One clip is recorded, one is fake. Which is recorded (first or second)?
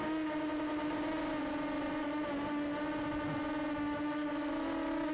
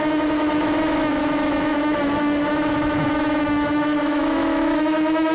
first